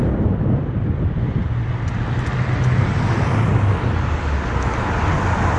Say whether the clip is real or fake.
real